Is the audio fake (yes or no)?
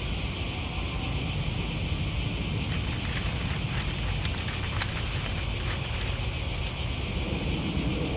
no